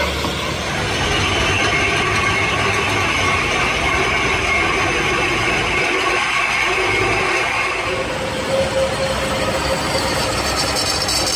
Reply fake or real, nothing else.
real